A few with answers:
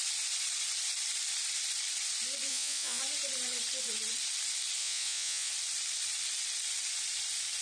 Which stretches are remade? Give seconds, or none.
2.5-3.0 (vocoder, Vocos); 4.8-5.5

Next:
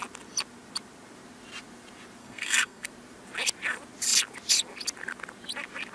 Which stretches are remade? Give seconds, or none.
2.2-2.9 (codec, SNAC)

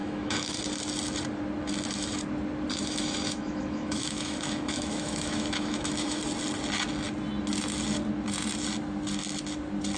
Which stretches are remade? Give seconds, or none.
0.0-0.6 (autoencoder, DAC-VAE); 2.8-6.2

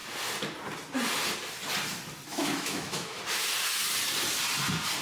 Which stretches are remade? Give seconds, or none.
2.3-3.2 (autoencoder, DAC-VAE)

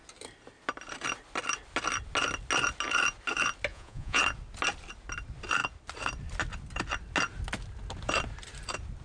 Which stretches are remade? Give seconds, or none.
3.7-4.2 (vocoder, Vocos)

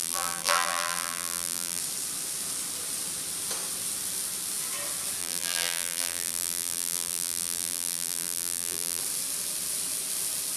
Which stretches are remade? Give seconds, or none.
0.0-1.8 (vocoder, BigVGAN v2); 5.2-9.0

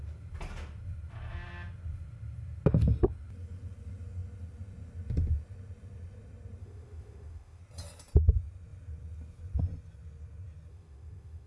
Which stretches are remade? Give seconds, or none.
6.6-7.6 (autoencoder, DAC-VAE); 10.7-11.5